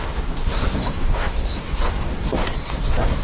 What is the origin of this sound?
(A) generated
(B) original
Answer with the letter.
A